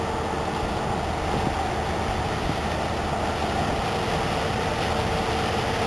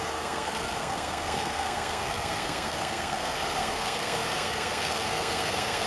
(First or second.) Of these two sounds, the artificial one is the second